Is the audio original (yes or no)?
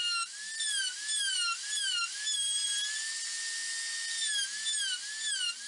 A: yes